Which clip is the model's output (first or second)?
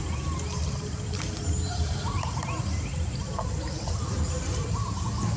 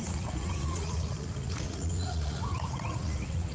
second